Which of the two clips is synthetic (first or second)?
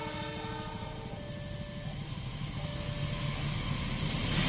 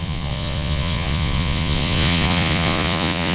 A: second